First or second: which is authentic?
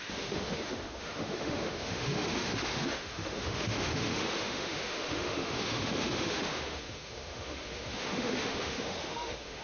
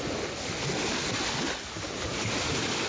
second